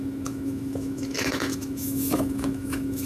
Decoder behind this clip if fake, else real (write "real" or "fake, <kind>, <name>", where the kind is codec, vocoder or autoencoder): fake, autoencoder, DAC-VAE